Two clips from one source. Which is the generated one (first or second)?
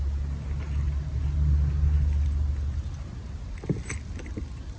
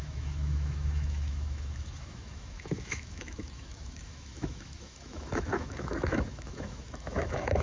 second